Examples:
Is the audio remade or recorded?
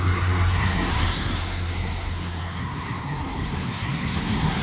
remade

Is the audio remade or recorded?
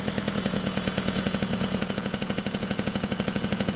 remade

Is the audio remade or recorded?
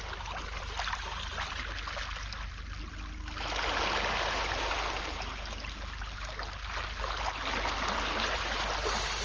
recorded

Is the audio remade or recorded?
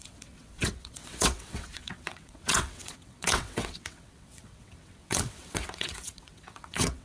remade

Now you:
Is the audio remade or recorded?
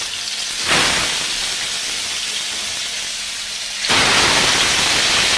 recorded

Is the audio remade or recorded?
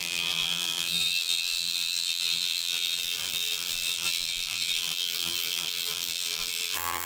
remade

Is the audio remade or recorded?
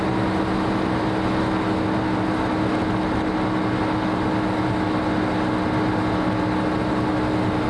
recorded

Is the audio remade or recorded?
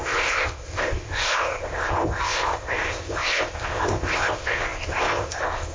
remade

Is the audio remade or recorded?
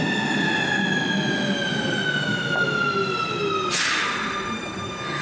recorded